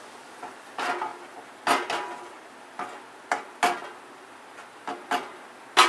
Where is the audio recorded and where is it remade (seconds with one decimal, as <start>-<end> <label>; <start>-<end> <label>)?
0.0-5.9 recorded